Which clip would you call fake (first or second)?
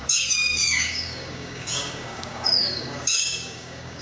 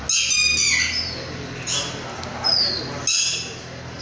first